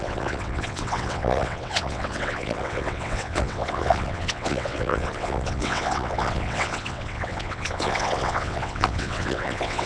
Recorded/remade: remade